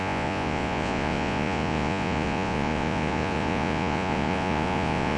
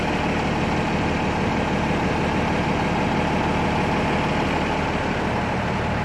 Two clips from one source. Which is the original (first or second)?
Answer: second